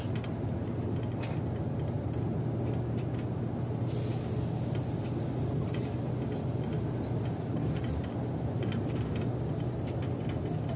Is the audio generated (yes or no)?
no